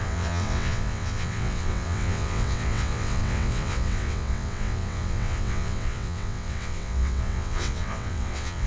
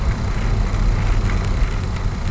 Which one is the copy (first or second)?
first